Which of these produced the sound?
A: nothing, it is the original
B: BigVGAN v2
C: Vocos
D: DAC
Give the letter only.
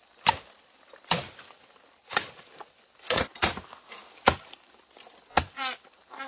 A